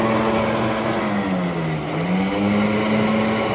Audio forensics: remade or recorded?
recorded